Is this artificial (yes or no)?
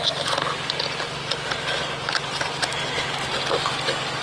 no